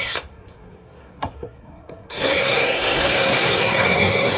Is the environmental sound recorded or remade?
remade